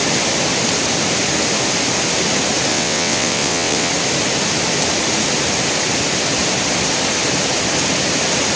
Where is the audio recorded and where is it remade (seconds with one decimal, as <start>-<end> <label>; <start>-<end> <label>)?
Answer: 0.0-2.7 recorded; 2.7-3.9 remade; 3.9-8.6 recorded